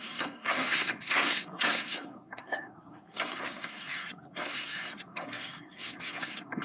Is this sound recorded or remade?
remade